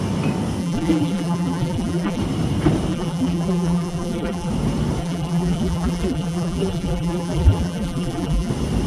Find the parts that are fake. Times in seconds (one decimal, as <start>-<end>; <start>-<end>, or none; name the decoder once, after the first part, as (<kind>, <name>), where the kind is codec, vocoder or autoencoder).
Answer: 0.6-2.2 (vocoder, BigVGAN v2); 2.9-4.5; 5.0-8.5